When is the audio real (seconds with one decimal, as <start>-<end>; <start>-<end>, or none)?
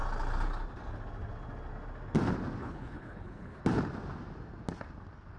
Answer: 0.0-2.6; 3.6-5.4